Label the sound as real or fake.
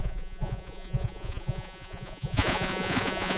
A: fake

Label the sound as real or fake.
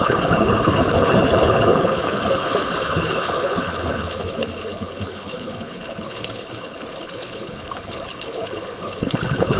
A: fake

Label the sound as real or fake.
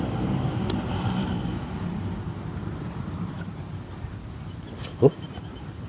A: fake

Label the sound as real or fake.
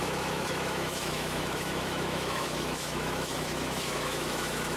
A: fake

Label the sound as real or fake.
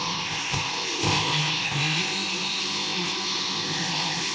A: fake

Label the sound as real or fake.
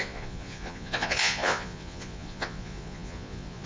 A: fake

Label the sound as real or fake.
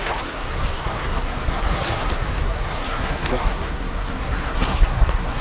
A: fake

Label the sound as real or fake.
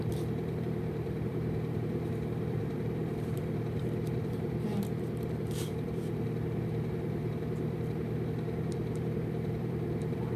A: fake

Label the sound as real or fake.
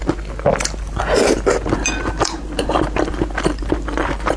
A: real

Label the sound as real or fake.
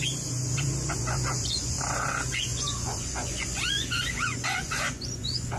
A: fake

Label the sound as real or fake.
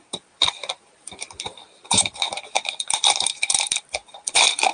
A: fake